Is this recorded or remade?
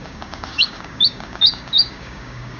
remade